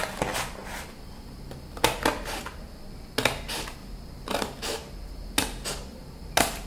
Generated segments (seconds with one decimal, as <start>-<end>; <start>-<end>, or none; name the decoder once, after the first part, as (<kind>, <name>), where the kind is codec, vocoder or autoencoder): 0.0-0.6 (vocoder, BigVGAN v2); 1.8-3.8; 5.7-6.7